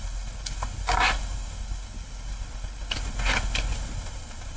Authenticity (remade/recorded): recorded